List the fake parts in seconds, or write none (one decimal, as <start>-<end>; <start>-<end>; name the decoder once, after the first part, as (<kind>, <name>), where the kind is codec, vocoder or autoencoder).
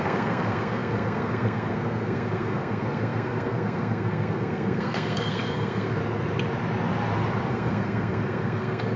0.0-6.0 (codec, SNAC); 7.5-9.0